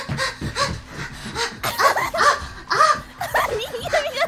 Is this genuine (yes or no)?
yes